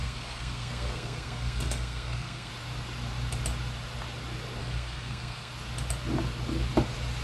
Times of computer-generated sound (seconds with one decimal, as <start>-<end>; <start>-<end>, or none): 0.0-2.5; 4.6-5.5